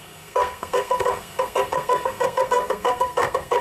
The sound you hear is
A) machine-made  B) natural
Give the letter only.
A